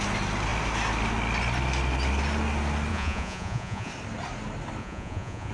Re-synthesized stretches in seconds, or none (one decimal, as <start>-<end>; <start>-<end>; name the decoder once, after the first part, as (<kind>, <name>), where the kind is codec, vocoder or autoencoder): 2.9-3.9 (vocoder, Vocos); 4.8-5.5